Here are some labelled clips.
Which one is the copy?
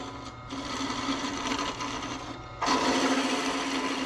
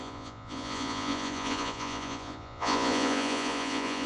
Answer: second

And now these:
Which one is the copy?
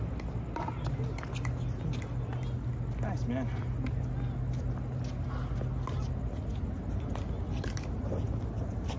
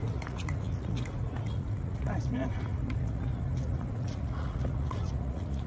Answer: second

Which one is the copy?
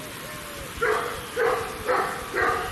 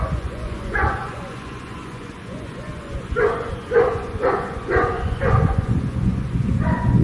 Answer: second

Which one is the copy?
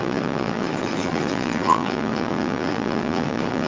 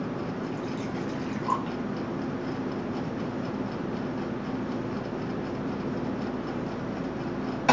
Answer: first